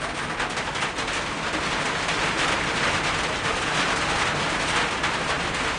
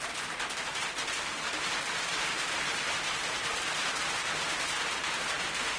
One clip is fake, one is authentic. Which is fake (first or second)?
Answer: second